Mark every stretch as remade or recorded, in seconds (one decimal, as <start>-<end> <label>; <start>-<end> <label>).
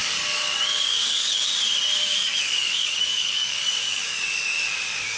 0.0-1.5 remade; 1.5-2.0 recorded; 2.0-5.2 remade